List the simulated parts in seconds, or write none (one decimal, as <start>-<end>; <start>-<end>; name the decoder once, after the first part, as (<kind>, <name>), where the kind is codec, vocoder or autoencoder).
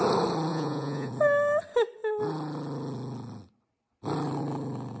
0.5-1.1 (vocoder, Vocos)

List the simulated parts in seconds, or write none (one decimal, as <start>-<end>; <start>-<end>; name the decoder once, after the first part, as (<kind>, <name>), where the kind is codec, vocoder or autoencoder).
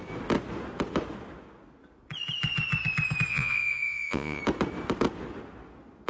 3.3-4.4 (vocoder, Vocos)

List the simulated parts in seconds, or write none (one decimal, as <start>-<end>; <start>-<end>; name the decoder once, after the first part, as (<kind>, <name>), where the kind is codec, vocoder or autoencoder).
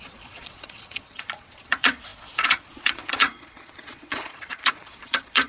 0.0-5.5 (vocoder, Vocos)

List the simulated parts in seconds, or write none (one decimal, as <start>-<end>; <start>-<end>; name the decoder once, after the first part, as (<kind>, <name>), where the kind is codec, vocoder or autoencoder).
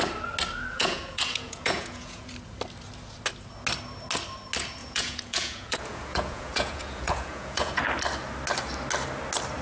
0.7-2.3 (vocoder, Vocos); 4.8-7.8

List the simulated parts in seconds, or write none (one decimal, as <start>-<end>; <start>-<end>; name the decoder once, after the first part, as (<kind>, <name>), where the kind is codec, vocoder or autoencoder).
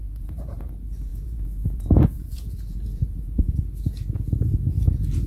0.0-0.7 (vocoder, Vocos); 1.1-3.6